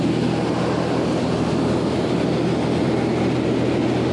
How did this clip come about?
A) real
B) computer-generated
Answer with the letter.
A